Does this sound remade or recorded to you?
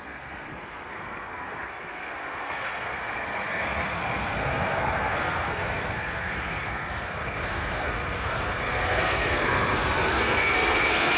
remade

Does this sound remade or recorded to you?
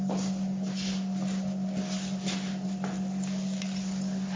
recorded